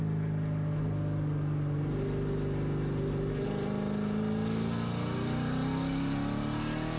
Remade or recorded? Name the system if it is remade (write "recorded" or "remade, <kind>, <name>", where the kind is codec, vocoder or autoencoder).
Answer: recorded